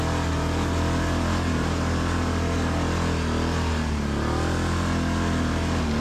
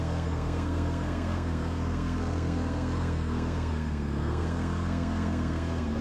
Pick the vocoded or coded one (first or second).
second